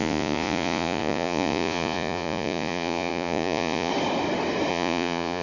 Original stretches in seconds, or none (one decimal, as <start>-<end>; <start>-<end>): 3.9-4.7